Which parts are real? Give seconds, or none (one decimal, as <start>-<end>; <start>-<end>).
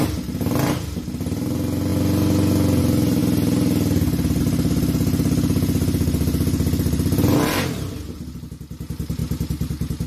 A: 0.0-10.1